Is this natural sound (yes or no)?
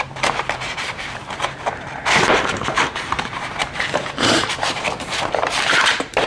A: no